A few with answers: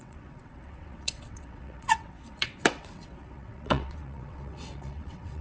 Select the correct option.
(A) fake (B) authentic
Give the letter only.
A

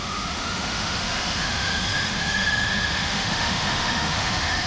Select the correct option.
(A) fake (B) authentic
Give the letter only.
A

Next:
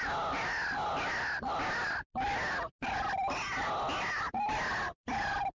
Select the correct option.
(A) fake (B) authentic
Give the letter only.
B